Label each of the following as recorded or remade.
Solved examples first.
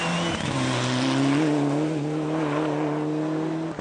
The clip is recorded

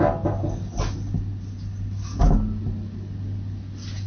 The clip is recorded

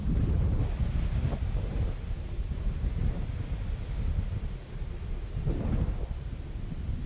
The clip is recorded